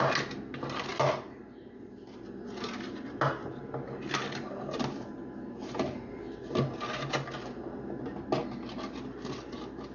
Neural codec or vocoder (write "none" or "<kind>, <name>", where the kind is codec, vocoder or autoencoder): none